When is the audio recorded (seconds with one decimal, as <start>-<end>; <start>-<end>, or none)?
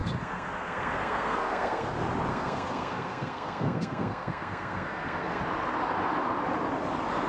1.9-2.3; 5.4-7.3